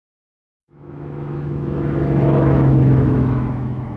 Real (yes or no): no